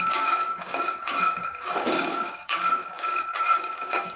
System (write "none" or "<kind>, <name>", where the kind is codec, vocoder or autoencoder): codec, DAC